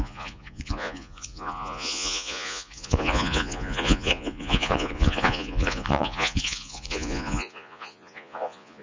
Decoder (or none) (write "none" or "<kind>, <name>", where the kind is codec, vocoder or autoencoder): vocoder, Vocos